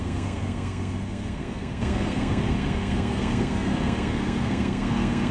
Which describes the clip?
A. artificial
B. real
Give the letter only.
A